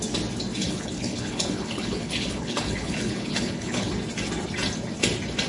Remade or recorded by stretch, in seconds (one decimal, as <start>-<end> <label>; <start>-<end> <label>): 0.0-0.6 recorded; 0.6-3.9 remade; 3.9-5.5 recorded

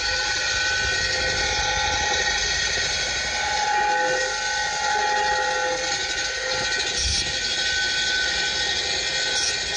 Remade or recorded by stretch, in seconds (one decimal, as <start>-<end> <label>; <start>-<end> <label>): 0.0-9.8 recorded

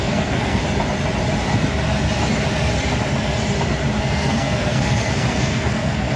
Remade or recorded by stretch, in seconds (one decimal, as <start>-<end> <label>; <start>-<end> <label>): 0.0-0.6 remade; 0.6-4.0 recorded; 4.0-6.2 remade